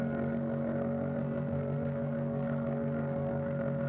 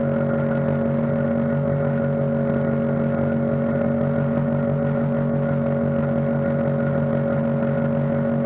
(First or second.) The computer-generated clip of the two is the first